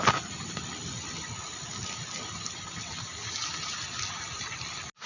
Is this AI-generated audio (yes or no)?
no